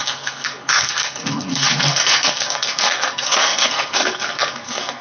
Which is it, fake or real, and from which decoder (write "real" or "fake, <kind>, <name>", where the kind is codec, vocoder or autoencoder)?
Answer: fake, codec, SNAC